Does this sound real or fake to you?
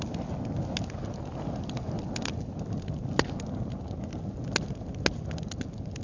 real